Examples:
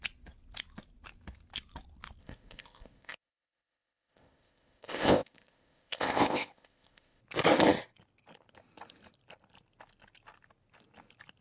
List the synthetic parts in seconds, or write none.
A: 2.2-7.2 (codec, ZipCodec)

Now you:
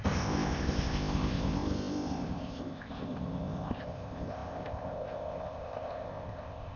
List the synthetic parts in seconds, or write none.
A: 0.0-6.8 (codec, ZipCodec)

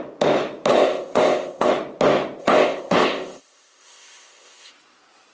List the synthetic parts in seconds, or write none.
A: 0.7-1.7 (codec, ZipCodec); 2.4-4.7

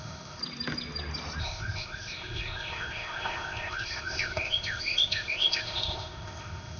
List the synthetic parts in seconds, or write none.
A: 0.0-0.4 (codec, ZipCodec); 1.4-6.8

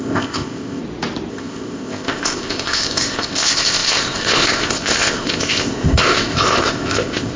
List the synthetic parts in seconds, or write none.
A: 0.0-0.8 (codec, ZipCodec); 1.3-7.4